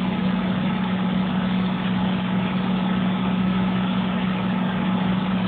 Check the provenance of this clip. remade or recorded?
remade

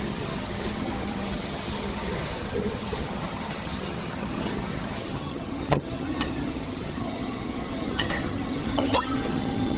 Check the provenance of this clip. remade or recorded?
remade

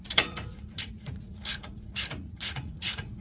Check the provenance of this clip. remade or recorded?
remade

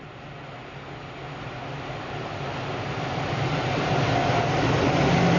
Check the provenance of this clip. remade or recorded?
recorded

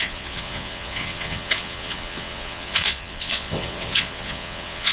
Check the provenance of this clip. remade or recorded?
remade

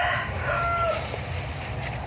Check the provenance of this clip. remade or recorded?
recorded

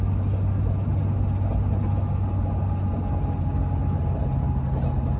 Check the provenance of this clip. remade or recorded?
recorded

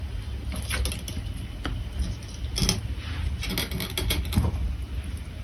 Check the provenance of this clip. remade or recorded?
recorded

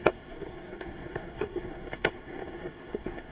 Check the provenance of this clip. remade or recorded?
remade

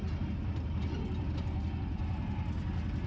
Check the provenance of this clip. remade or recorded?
recorded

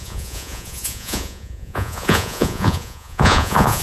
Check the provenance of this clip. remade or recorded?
remade